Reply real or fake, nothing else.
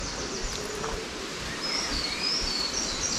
real